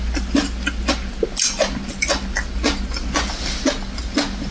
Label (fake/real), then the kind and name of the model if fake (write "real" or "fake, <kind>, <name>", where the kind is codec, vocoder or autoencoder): real